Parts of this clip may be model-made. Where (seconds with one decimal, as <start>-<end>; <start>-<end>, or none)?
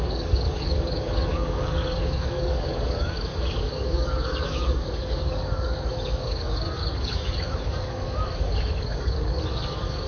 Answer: 0.0-10.1